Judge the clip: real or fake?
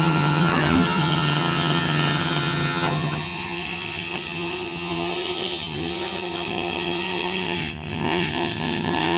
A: fake